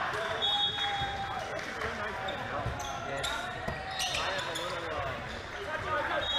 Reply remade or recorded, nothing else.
recorded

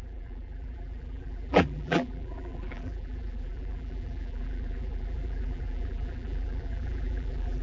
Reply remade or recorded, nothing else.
remade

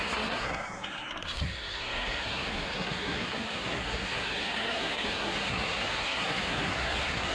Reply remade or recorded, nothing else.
remade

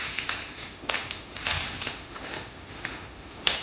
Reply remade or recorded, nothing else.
remade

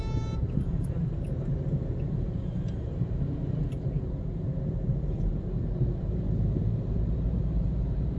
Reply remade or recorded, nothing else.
remade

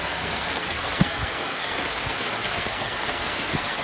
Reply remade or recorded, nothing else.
remade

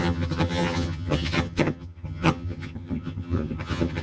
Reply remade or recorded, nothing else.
remade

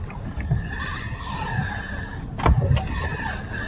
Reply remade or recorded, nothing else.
recorded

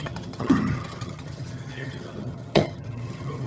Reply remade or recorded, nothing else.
remade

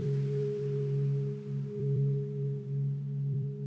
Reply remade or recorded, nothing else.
remade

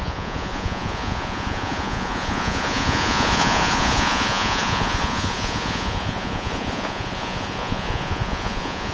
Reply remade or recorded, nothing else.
remade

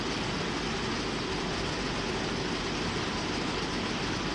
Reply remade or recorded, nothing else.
recorded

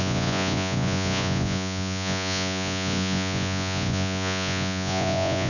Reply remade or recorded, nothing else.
remade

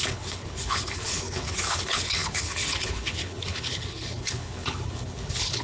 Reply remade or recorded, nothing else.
remade